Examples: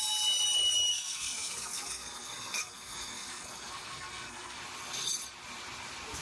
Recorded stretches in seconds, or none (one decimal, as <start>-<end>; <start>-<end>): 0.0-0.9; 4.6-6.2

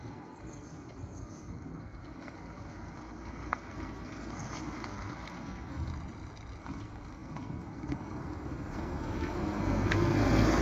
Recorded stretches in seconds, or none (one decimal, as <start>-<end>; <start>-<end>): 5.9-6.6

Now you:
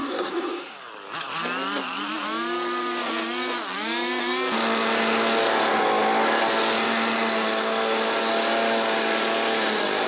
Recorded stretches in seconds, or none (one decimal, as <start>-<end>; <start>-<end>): 0.7-10.1